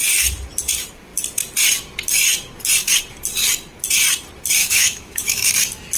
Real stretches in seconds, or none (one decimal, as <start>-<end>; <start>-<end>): 0.0-4.6; 5.5-6.0